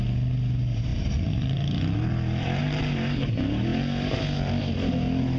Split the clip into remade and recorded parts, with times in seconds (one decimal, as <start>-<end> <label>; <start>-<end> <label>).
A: 0.0-0.9 recorded; 0.9-2.6 remade; 2.6-5.4 recorded